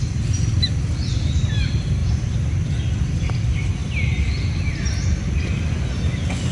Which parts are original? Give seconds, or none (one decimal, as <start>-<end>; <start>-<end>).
0.0-6.5